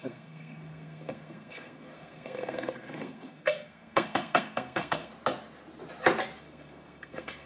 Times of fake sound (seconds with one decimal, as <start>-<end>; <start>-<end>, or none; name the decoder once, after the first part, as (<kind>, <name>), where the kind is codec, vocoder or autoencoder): 0.0-5.1 (codec, SNAC); 6.4-7.5